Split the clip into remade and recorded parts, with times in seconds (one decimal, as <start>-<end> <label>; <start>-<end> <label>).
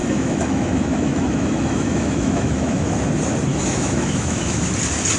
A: 0.0-2.9 remade; 2.9-3.5 recorded; 3.5-4.6 remade; 4.6-5.2 recorded